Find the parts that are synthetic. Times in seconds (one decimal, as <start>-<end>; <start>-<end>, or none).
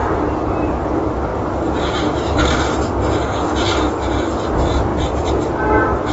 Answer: 4.9-6.1